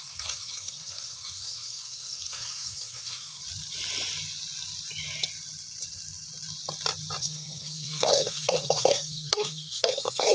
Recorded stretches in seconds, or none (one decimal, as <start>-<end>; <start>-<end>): 3.4-7.2